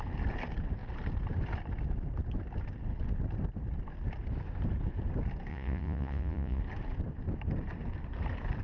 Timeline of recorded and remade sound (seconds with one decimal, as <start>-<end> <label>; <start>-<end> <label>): 0.0-5.5 recorded; 5.5-6.6 remade; 6.6-8.6 recorded